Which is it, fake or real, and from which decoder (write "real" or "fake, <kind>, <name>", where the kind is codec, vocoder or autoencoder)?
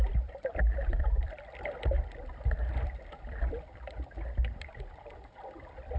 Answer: fake, vocoder, BigVGAN v2